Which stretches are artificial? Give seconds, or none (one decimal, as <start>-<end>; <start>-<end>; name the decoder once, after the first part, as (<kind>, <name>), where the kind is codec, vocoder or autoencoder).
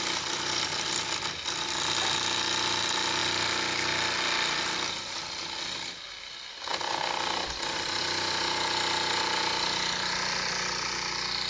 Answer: none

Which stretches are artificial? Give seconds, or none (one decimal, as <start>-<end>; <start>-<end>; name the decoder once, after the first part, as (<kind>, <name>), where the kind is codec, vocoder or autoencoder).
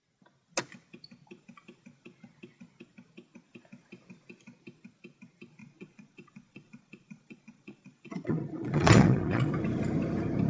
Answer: 5.6-9.5 (vocoder, Vocos)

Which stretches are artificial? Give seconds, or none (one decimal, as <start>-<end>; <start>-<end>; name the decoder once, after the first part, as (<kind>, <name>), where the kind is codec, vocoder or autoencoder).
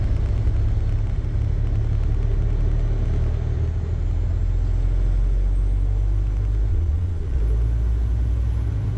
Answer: 6.7-7.4 (vocoder, Vocos)